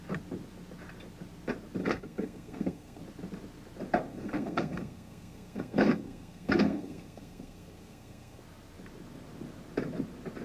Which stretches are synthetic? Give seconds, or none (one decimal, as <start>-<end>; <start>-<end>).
1.8-3.0; 4.1-8.4